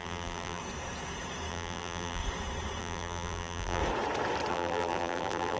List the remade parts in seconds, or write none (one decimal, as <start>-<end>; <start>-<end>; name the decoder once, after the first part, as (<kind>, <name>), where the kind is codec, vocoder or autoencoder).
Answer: 0.0-0.6 (vocoder, BigVGAN v2); 1.5-2.2; 2.8-3.8; 4.5-5.6